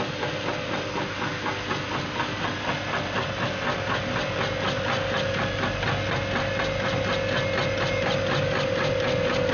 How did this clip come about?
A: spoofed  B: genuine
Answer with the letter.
B